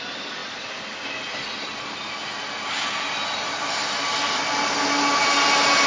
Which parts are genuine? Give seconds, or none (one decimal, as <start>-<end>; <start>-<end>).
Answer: 0.0-5.9

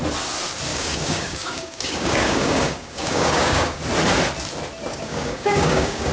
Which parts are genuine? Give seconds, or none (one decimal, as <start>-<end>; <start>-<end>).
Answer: 0.0-0.7; 3.8-4.9

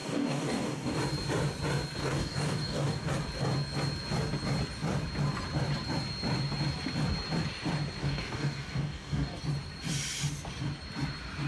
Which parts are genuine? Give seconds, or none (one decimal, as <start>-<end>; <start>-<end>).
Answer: 1.0-2.0; 3.1-8.0; 9.4-11.5

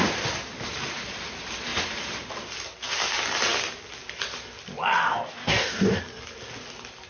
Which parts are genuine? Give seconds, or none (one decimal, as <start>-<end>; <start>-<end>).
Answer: 0.0-5.0; 6.0-7.1

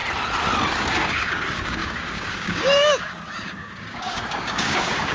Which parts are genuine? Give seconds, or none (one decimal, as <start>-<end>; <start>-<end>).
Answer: 0.0-0.7

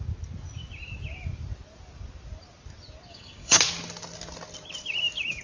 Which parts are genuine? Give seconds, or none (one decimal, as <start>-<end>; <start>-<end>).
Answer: 0.0-3.1; 3.6-5.4

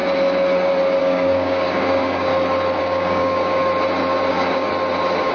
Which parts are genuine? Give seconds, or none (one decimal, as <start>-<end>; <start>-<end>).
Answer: 0.0-1.0; 2.3-2.8; 3.6-4.3; 4.7-5.3

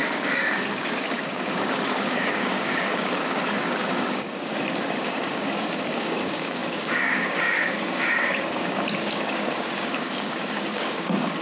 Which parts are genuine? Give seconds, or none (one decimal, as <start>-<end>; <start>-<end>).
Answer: none